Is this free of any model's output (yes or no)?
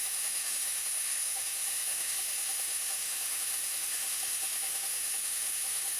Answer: no